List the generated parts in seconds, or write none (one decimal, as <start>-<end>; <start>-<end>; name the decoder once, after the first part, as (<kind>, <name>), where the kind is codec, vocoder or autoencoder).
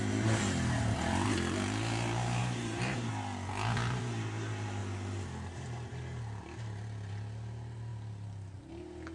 2.4-3.1 (vocoder, BigVGAN v2)